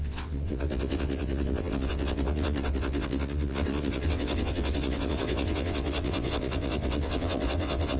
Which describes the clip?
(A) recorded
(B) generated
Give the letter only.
B